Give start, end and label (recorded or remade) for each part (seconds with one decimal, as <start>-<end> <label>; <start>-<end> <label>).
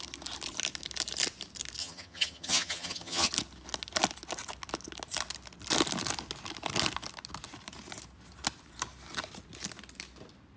0.0-1.8 recorded; 1.8-3.3 remade; 3.3-10.6 recorded